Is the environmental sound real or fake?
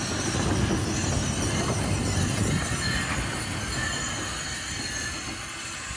real